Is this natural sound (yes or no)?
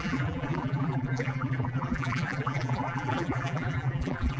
no